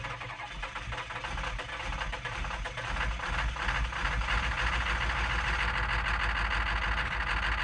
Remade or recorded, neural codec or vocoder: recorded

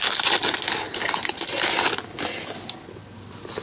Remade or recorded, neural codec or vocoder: recorded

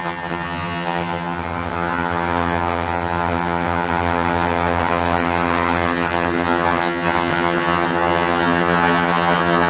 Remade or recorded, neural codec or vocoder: remade, vocoder, HiFi-GAN